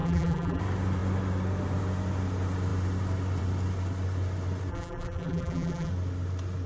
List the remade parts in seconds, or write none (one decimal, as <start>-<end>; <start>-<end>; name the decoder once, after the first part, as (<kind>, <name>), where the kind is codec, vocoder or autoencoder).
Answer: 0.0-0.6 (vocoder, BigVGAN v2); 4.7-5.9